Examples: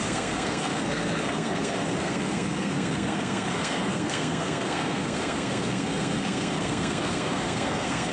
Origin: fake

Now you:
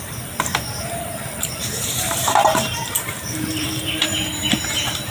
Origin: fake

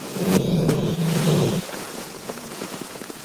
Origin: fake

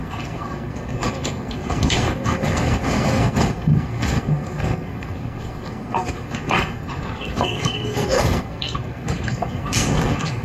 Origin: fake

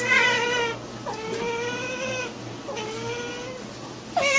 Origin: real